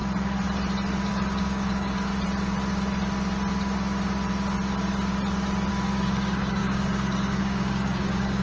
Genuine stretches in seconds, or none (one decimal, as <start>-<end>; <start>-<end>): 0.0-1.1; 2.1-5.7